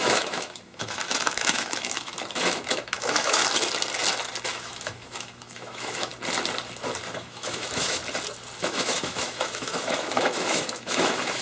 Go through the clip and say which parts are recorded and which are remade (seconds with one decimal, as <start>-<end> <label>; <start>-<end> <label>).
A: 0.0-3.4 remade; 3.4-4.5 recorded; 4.5-6.1 remade; 6.1-7.1 recorded; 7.1-8.0 remade; 8.0-8.6 recorded; 8.6-11.4 remade